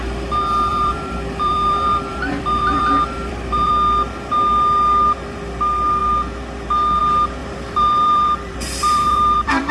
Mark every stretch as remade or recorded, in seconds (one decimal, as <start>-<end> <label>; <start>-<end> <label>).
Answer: 0.0-0.7 recorded; 0.7-3.7 remade; 3.7-7.4 recorded; 7.4-9.7 remade